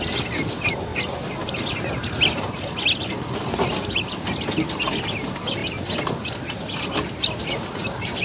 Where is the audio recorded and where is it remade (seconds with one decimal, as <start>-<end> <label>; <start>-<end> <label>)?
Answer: 0.0-8.2 recorded